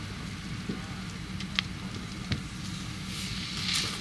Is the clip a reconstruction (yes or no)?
no